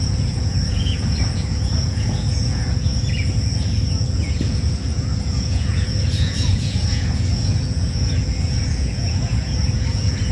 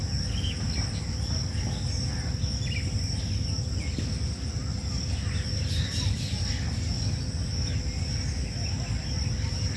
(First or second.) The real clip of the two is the second